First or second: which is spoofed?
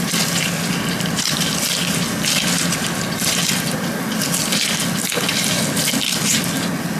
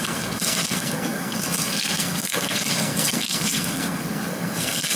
second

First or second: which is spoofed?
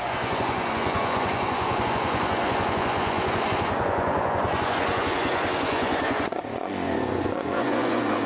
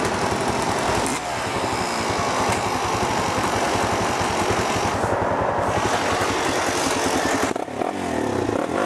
first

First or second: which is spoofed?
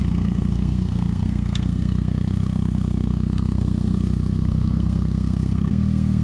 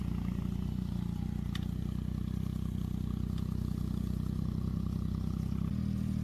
first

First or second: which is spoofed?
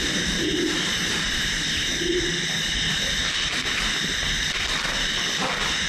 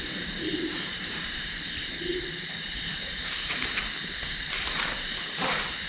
second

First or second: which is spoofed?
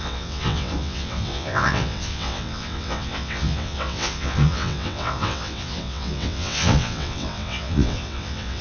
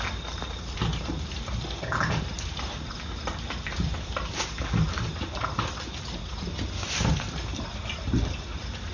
first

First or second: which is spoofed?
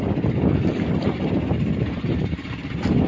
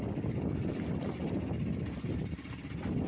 first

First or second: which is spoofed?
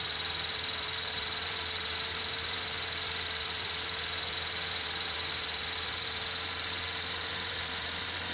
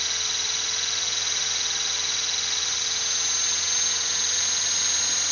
first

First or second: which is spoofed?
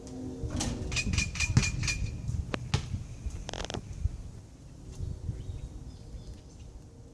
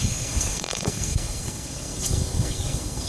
second